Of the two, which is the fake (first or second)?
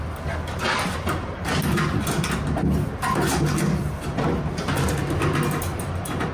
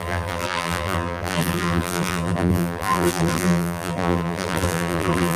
second